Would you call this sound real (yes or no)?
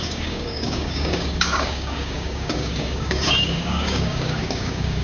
no